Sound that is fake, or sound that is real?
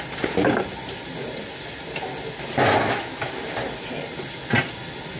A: real